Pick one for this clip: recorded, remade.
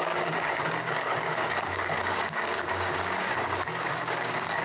remade